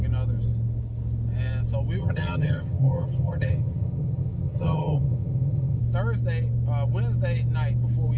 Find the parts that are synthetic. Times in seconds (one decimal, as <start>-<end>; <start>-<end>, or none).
2.0-5.8